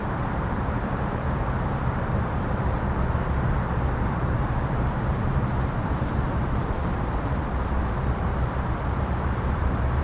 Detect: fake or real fake